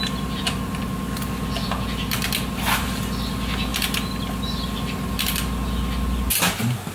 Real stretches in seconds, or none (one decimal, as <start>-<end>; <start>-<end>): 0.0-3.7; 6.2-6.9